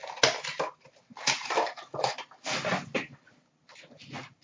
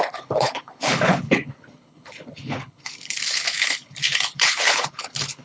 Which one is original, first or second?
first